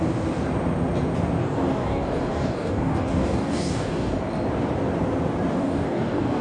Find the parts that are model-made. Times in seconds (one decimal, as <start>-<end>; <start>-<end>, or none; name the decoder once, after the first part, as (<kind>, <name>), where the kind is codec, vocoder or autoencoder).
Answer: 1.4-4.1 (codec, DAC); 5.5-6.4